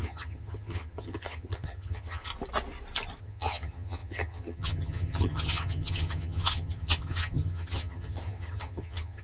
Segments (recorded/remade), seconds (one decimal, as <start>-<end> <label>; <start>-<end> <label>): 0.0-2.3 remade; 2.3-3.2 recorded; 3.2-9.2 remade